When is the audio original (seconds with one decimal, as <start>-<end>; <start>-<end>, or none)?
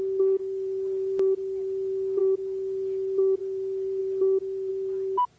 0.0-5.4